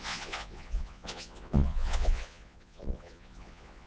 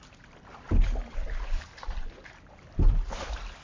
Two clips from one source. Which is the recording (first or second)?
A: second